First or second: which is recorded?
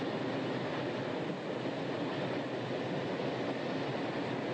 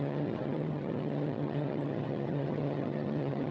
first